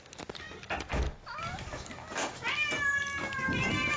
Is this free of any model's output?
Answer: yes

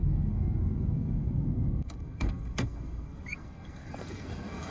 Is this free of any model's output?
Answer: no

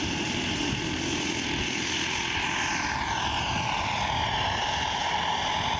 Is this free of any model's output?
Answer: yes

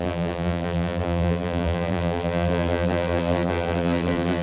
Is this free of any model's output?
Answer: no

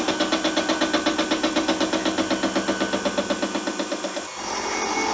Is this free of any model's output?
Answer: yes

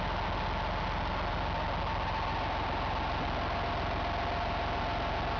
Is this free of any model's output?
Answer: yes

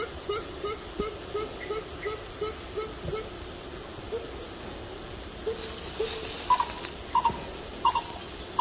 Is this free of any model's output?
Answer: yes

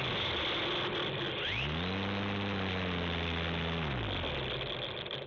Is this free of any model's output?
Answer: yes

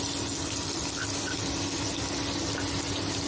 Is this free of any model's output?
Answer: yes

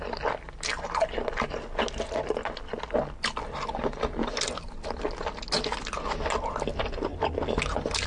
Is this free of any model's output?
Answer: yes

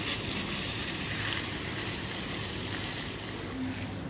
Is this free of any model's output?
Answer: yes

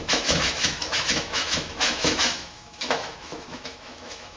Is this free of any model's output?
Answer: no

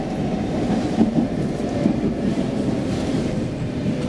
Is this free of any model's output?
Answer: no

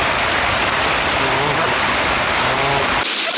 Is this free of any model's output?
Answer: yes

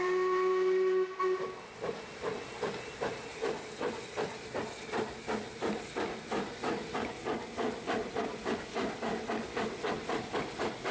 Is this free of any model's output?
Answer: yes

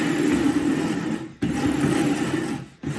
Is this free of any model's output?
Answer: yes